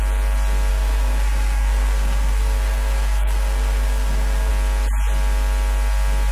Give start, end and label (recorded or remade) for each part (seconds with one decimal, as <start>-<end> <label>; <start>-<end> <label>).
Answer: 0.0-0.7 recorded; 0.7-4.5 remade; 4.5-6.3 recorded